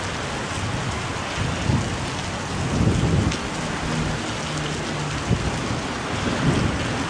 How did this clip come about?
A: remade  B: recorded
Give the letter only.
B